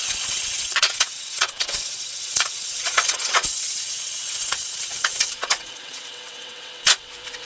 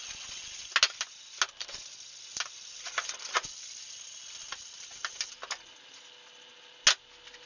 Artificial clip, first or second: first